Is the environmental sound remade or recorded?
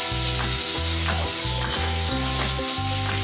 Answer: recorded